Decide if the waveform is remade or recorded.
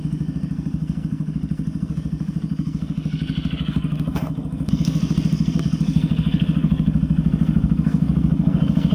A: remade